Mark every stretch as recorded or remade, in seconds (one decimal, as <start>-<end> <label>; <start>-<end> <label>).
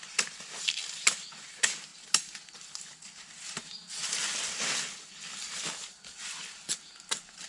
0.0-7.5 recorded